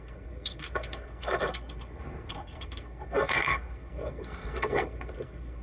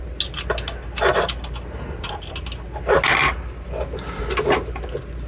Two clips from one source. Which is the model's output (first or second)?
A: first